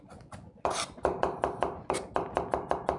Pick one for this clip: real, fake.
real